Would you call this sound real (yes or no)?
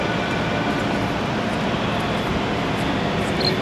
yes